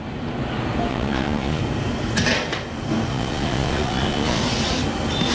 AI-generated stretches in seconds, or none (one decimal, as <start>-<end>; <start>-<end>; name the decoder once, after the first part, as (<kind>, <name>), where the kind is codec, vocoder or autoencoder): 0.9-1.6 (vocoder, Vocos); 3.1-4.4